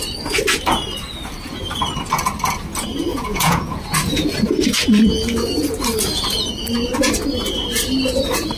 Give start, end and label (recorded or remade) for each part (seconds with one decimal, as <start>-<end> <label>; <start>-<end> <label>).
0.0-3.1 recorded; 3.1-3.8 remade; 3.8-8.6 recorded